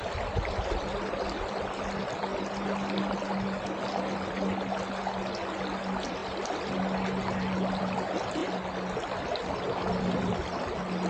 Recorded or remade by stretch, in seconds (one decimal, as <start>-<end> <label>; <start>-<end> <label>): 0.0-11.1 recorded